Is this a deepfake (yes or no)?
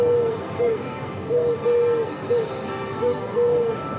yes